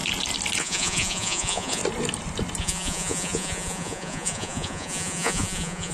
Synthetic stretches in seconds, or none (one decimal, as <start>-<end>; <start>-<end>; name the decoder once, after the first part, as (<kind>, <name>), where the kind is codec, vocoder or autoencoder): 0.6-1.8 (vocoder, Vocos); 2.6-5.9